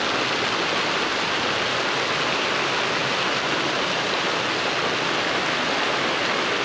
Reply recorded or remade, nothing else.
recorded